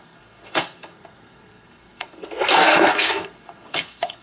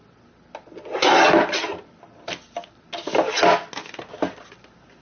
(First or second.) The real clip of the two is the second